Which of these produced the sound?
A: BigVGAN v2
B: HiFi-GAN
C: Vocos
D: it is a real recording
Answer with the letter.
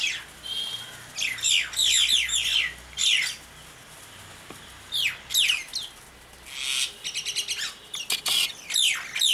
D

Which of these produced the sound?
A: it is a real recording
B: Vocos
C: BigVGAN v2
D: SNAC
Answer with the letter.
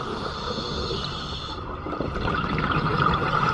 C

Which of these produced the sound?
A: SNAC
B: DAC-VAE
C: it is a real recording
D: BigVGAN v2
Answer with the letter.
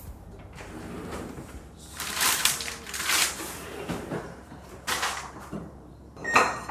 D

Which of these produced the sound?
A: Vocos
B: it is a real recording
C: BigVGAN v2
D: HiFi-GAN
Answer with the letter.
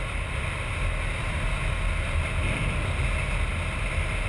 B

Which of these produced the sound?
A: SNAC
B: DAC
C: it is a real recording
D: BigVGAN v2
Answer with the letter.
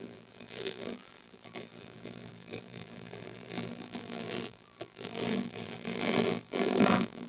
D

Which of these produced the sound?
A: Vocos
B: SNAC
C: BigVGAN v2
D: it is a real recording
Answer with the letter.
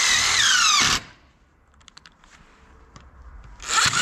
C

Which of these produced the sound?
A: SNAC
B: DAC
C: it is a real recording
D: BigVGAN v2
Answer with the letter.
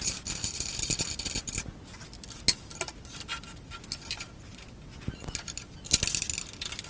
C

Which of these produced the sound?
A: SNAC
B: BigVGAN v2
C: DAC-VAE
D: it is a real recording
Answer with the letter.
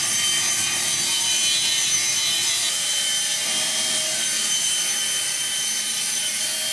B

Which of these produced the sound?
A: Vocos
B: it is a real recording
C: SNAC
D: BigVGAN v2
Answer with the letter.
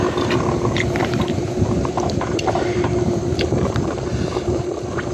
D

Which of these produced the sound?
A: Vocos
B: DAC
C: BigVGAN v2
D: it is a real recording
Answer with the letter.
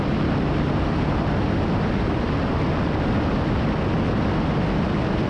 D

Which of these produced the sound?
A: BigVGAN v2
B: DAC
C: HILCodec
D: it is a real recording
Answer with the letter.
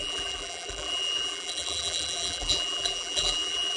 A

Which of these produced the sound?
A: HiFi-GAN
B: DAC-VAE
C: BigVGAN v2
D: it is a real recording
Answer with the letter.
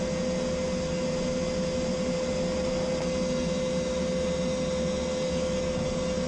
D